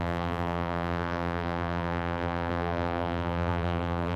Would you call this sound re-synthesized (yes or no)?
yes